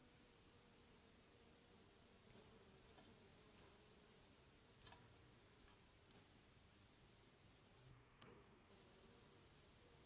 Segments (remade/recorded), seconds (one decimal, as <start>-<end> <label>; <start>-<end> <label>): 0.0-7.9 recorded; 7.9-8.7 remade; 8.7-10.1 recorded